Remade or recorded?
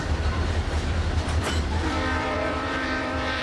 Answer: remade